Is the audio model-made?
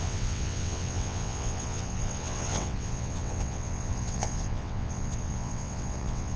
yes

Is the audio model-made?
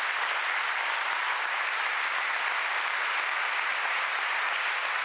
no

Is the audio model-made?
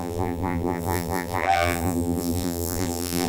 yes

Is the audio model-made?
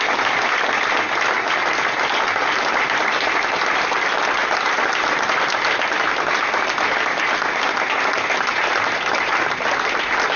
no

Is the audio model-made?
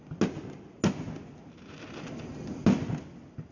no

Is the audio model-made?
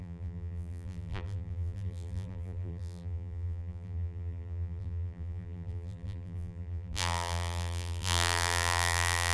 yes